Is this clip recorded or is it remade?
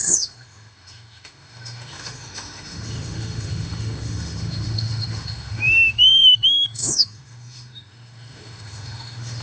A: remade